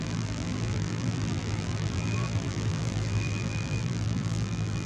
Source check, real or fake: fake